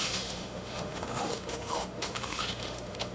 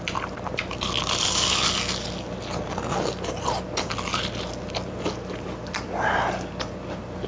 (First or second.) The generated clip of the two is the first